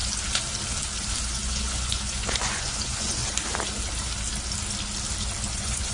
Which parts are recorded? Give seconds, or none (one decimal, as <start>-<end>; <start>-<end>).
0.0-1.3; 3.2-5.5